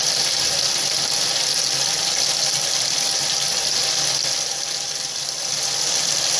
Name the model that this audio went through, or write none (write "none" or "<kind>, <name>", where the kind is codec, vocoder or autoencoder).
none